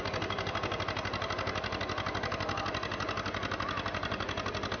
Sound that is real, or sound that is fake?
real